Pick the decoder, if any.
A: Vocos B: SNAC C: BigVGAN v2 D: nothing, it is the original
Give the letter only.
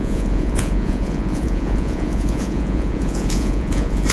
A